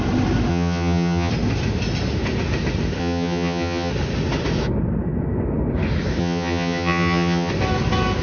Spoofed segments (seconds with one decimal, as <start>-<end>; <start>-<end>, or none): 0.5-1.3; 3.0-3.9; 6.2-7.5

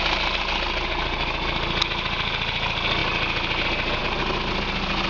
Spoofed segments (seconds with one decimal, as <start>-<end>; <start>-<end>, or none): none

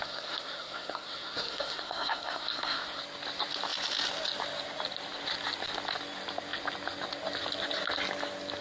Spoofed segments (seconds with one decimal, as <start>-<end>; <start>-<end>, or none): 0.0-3.0